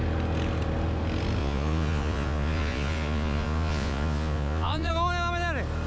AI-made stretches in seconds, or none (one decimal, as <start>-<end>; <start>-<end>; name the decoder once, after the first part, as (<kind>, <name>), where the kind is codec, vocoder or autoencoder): 1.4-4.9 (vocoder, Vocos)